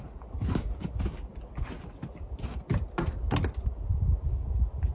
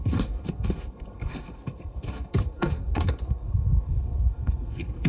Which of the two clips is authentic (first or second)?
first